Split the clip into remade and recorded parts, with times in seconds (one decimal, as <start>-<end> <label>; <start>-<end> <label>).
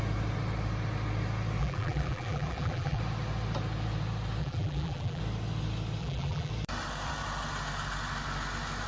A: 0.0-1.6 recorded; 1.6-3.0 remade; 3.0-4.4 recorded; 4.4-5.2 remade; 5.2-6.0 recorded; 6.0-6.5 remade; 6.5-8.9 recorded